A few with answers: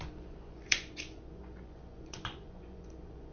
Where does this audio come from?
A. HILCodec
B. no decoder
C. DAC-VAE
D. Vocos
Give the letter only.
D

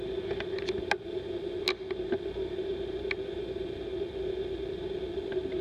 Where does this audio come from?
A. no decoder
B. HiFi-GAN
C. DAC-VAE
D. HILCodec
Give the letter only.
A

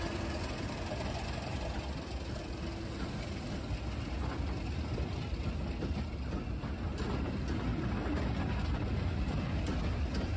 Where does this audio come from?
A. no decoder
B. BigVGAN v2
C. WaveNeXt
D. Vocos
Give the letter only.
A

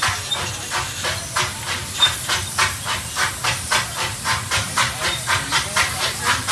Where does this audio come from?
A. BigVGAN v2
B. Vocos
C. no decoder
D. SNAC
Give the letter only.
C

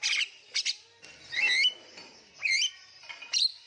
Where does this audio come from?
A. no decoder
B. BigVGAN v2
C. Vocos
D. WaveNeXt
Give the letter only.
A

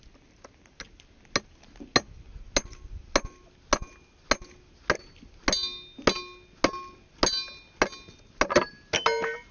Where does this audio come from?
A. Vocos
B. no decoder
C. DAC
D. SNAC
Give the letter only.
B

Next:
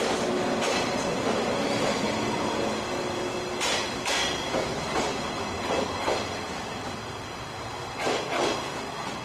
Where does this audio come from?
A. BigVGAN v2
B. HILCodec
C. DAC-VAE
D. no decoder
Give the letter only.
D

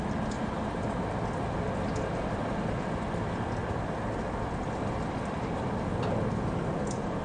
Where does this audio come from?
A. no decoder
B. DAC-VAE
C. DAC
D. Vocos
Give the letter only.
A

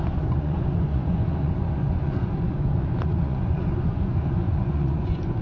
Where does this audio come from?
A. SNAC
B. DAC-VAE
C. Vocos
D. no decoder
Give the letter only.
C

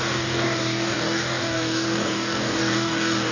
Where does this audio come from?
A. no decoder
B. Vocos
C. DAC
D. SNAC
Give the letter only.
C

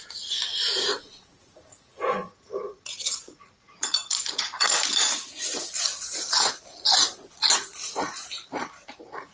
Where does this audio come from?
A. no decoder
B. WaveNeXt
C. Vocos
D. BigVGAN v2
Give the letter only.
C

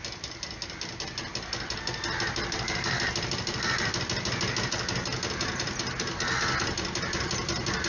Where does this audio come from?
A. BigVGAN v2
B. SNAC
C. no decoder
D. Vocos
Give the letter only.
C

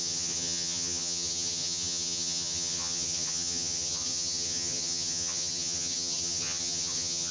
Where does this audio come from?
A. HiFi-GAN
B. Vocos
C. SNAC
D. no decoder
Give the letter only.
A